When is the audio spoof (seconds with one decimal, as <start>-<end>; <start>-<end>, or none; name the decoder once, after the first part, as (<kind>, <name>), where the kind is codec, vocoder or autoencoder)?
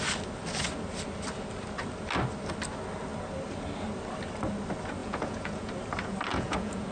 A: 5.0-5.7 (vocoder, Vocos); 6.3-6.9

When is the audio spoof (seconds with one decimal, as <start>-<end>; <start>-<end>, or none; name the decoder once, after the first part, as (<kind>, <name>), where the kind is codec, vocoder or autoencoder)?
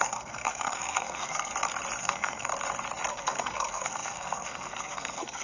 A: 0.0-1.5 (codec, SNAC); 2.0-2.5; 3.1-5.4